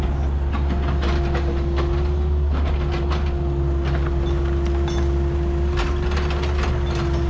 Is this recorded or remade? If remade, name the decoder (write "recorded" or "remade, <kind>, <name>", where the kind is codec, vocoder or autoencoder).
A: recorded